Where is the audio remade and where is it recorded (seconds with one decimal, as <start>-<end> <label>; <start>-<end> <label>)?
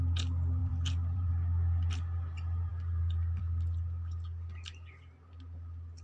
0.0-0.6 recorded; 0.6-1.3 remade; 1.3-2.7 recorded; 2.7-3.4 remade; 3.4-6.0 recorded